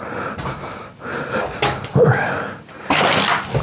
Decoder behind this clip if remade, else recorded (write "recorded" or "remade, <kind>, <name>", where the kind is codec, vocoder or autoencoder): recorded